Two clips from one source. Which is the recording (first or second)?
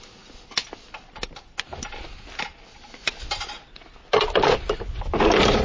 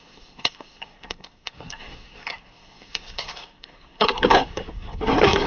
first